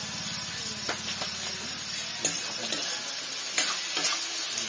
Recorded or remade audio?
recorded